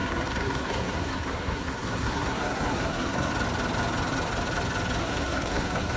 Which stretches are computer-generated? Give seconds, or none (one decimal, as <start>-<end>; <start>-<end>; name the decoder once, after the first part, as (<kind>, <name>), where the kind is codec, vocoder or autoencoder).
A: 0.0-3.3 (codec, SNAC); 5.0-6.0